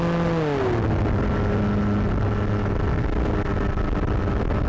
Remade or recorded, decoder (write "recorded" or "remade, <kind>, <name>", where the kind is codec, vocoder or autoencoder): recorded